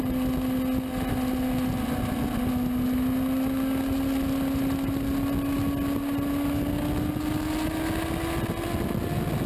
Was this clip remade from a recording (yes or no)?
no